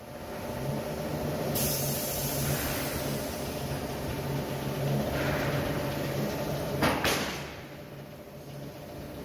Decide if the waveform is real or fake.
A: real